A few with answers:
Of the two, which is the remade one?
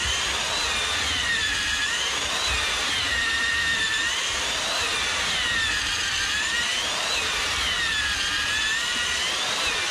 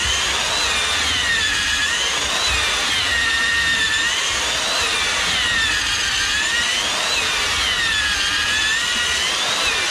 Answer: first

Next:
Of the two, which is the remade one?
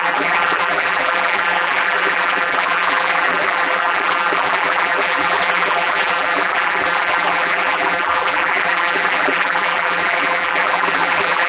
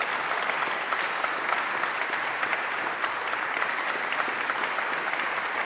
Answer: first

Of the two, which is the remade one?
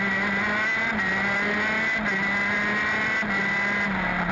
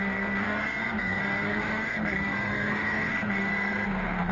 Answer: second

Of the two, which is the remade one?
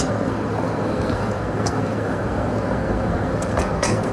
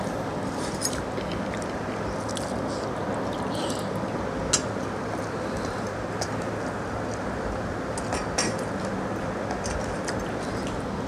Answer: first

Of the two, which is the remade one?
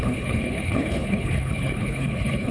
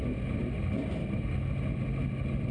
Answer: first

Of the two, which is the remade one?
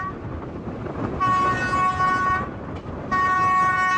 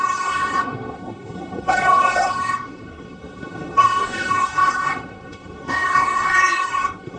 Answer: second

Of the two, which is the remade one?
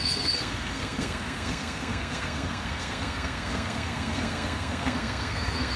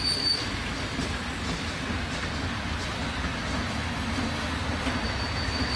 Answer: first